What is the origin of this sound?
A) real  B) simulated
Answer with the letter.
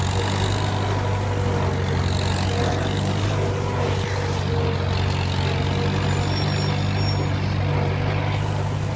A